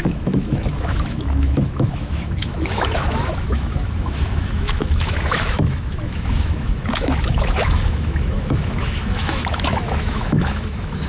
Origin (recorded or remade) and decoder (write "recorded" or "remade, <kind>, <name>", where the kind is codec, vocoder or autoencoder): remade, autoencoder, DAC-VAE